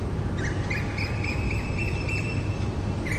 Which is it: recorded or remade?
remade